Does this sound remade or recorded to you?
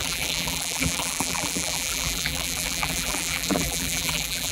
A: remade